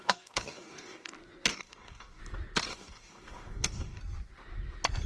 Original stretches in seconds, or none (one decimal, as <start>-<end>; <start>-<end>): 1.1-1.5; 2.2-2.7; 4.0-5.1